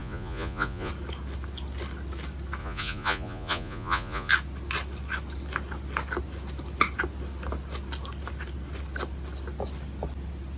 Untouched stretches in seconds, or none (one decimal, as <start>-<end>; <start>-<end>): 0.9-2.6; 4.3-10.6